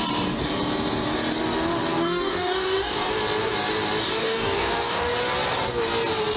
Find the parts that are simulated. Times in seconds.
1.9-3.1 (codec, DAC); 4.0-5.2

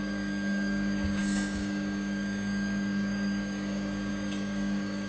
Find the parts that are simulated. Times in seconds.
0.0-5.1 (codec, DAC)

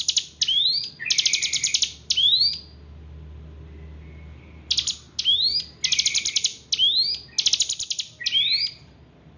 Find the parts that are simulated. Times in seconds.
none

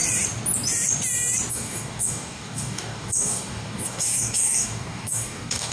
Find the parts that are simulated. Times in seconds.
1.5-5.7 (codec, DAC)

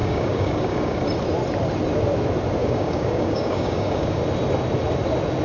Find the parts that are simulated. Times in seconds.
0.0-1.0 (codec, DAC); 2.6-4.2

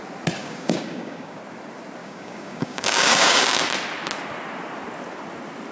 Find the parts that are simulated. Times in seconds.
0.4-1.4 (codec, DAC); 2.0-3.6

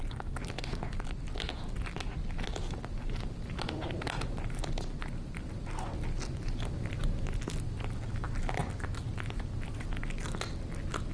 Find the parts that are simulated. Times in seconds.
none

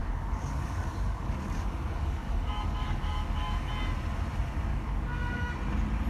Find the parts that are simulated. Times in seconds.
0.0-3.7 (codec, DAC); 4.7-5.5